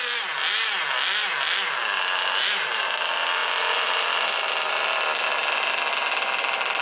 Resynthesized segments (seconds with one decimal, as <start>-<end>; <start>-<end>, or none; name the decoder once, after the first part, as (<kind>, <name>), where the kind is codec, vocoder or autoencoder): none